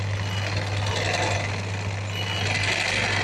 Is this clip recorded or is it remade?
recorded